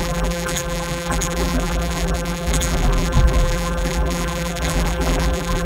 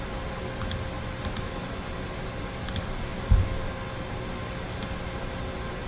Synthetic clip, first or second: first